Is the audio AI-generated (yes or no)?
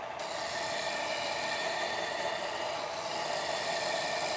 no